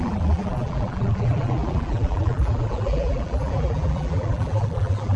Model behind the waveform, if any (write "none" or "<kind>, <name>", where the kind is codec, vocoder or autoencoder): vocoder, BigVGAN v2